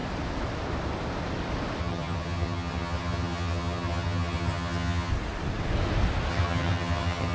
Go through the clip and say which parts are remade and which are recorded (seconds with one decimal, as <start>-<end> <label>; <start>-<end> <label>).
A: 0.0-1.8 recorded; 1.8-5.1 remade; 5.1-6.3 recorded; 6.3-7.3 remade